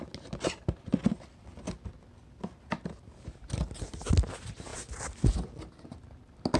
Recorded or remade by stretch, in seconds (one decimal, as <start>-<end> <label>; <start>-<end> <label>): 0.0-6.6 recorded